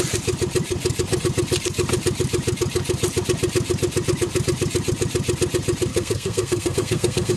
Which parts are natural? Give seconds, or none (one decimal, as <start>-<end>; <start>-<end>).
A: 0.0-5.9